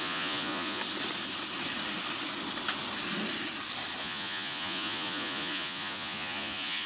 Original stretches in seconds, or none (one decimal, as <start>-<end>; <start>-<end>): 0.8-4.0